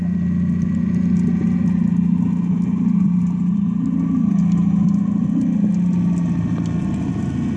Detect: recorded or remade recorded